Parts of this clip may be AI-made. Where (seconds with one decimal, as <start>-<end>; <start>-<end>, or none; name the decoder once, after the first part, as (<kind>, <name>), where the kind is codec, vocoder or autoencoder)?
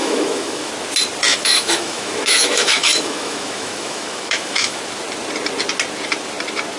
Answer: 0.0-0.7 (autoencoder, DAC-VAE); 1.3-4.8